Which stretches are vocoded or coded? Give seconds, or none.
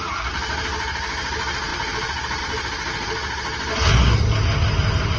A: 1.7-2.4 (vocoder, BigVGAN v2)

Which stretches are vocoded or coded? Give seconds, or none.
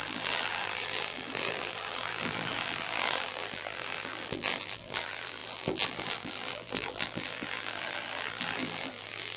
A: 0.0-9.4 (vocoder, BigVGAN v2)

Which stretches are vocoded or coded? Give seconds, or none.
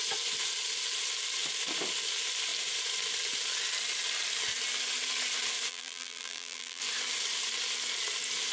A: 5.7-6.8 (vocoder, BigVGAN v2)